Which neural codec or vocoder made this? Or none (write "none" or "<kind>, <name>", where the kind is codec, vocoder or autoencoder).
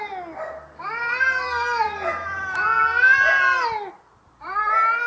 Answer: none